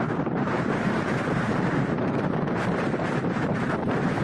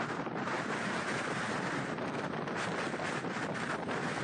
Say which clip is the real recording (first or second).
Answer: second